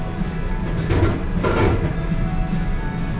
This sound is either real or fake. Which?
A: real